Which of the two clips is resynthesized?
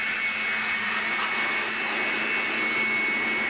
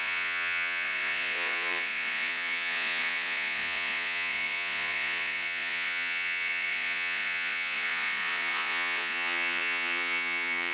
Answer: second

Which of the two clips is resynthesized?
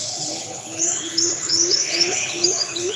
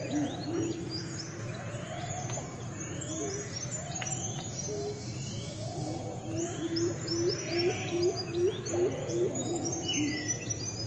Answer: first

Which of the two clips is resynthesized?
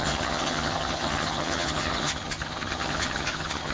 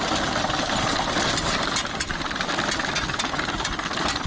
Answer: first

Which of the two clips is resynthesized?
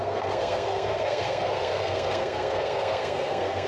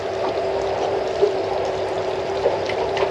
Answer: first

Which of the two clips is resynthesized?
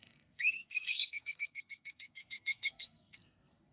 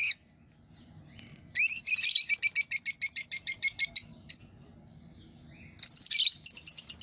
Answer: first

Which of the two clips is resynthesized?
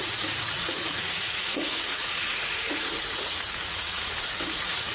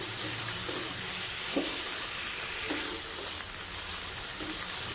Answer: first